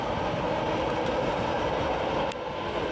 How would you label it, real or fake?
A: real